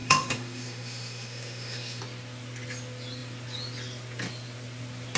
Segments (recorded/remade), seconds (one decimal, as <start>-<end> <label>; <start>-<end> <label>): 0.0-2.0 remade; 2.0-5.2 recorded